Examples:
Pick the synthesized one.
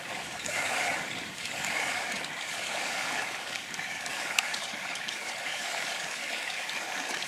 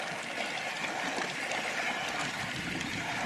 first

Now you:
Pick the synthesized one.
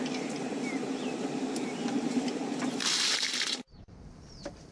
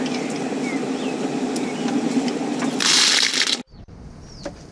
first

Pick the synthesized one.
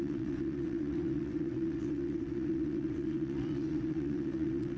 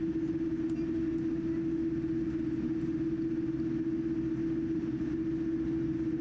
first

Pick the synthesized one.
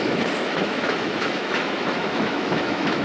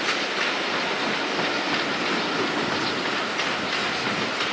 first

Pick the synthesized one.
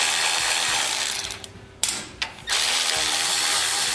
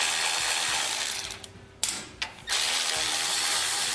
first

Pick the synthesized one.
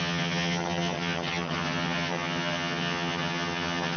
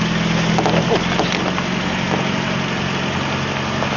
first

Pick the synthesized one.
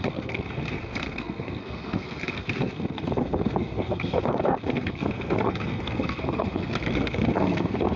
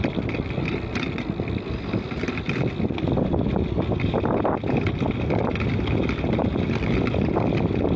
first